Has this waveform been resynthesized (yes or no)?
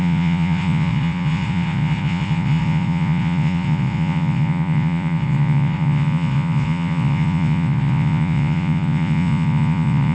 yes